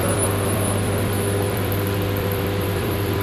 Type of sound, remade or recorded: remade